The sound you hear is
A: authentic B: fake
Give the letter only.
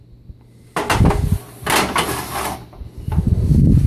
A